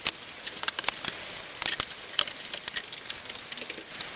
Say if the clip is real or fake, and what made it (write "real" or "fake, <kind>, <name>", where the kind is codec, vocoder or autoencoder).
real